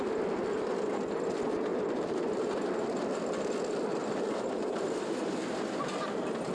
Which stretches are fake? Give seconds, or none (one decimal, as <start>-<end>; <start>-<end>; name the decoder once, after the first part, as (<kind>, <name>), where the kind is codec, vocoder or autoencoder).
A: 1.7-2.2 (vocoder, BigVGAN v2); 4.0-5.0